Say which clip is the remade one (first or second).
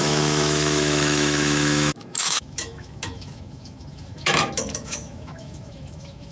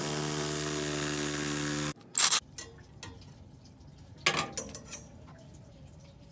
first